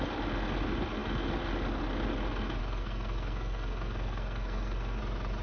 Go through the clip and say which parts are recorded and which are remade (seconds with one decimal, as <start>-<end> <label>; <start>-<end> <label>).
0.0-2.6 recorded; 2.6-5.0 remade; 5.0-5.4 recorded